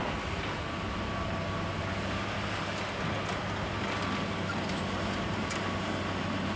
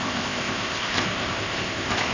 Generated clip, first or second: second